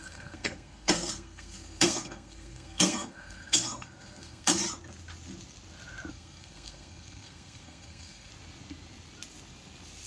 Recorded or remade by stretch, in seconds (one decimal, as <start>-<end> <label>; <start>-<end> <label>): 0.0-4.6 remade; 4.6-6.1 recorded; 6.1-8.3 remade; 8.3-10.1 recorded